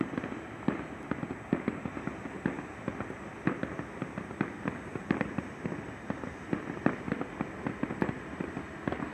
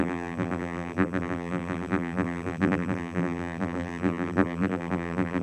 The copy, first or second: second